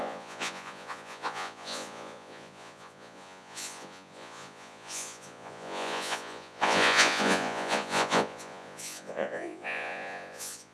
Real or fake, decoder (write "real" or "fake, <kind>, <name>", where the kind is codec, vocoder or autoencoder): fake, vocoder, Vocos